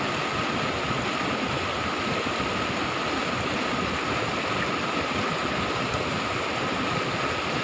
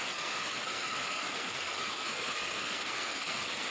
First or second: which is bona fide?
first